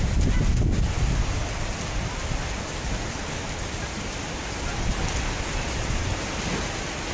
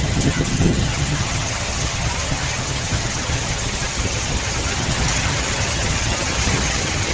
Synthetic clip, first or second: second